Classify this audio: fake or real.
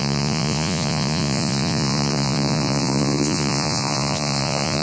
fake